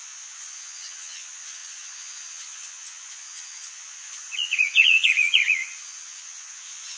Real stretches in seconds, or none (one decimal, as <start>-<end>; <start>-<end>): none